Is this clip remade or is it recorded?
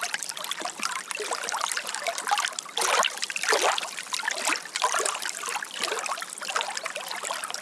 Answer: recorded